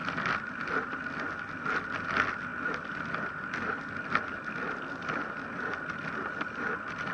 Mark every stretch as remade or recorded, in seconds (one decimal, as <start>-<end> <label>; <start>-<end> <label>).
0.0-7.1 recorded